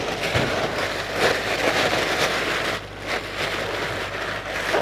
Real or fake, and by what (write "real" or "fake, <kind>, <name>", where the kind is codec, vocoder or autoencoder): real